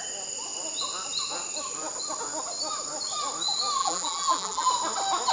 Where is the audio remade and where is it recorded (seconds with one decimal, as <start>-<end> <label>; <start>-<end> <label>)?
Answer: 0.0-3.8 recorded; 3.8-4.7 remade; 4.7-5.3 recorded